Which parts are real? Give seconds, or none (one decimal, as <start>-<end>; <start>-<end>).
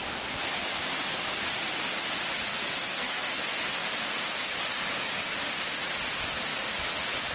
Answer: 0.0-2.5; 3.3-7.3